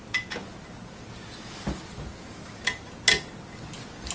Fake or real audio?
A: real